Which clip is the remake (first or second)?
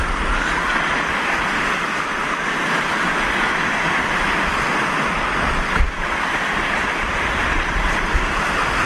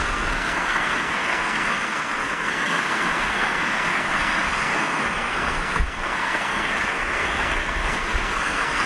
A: second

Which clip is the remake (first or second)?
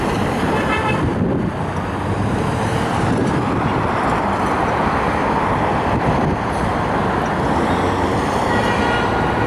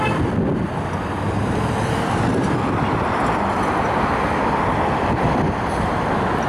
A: first